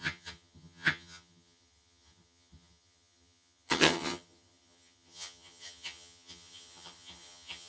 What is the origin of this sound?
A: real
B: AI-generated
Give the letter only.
B